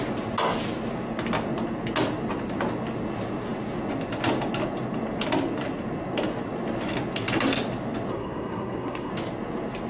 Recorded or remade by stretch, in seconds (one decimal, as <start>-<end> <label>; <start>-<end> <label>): 0.0-8.1 recorded; 8.1-9.1 remade; 9.1-9.9 recorded